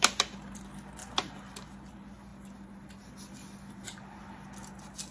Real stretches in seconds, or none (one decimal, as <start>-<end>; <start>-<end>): 0.0-5.1